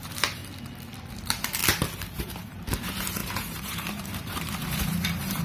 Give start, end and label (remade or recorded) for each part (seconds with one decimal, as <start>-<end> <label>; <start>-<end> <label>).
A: 0.0-0.4 remade; 0.4-1.1 recorded; 1.1-1.6 remade; 1.6-2.2 recorded; 2.2-5.4 remade